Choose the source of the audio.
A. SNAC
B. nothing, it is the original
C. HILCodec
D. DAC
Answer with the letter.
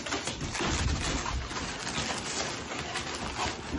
B